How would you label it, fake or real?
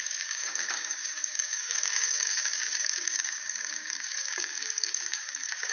fake